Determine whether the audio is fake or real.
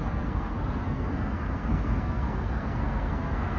fake